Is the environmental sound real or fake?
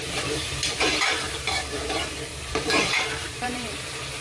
fake